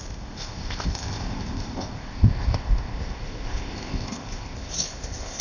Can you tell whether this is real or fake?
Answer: fake